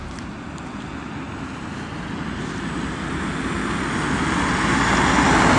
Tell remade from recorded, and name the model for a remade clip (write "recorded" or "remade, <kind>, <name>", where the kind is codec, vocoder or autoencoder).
recorded